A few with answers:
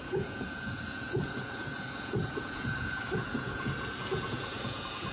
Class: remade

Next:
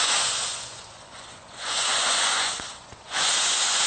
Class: remade